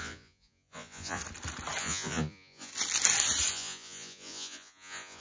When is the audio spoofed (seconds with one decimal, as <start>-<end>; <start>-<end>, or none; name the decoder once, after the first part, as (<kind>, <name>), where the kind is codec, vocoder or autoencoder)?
0.0-1.2 (vocoder, Vocos); 1.8-2.7; 3.5-5.2